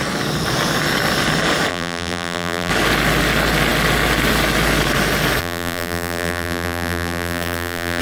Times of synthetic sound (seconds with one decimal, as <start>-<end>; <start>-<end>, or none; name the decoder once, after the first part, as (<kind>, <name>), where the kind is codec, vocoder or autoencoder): 1.7-2.7 (vocoder, BigVGAN v2); 5.4-8.0